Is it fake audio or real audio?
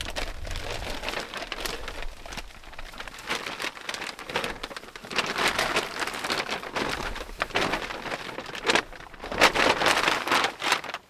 real